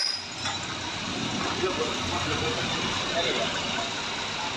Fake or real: real